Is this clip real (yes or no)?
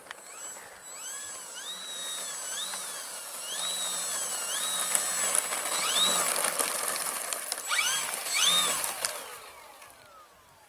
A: yes